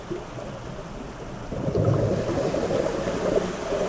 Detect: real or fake real